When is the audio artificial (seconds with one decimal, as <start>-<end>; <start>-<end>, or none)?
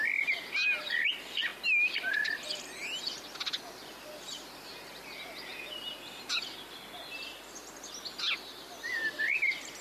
none